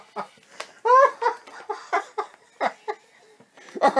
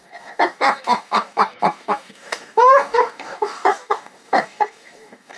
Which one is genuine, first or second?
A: first